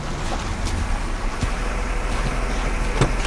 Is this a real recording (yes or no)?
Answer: yes